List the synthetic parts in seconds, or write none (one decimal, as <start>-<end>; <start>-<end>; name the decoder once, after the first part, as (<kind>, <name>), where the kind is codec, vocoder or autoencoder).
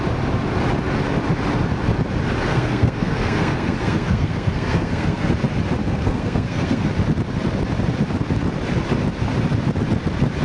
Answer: 2.5-5.3 (codec, SNAC); 5.8-6.9